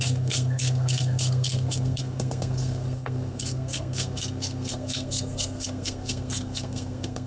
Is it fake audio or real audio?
fake